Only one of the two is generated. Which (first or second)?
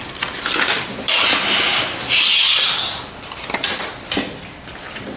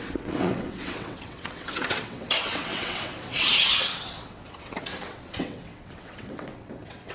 second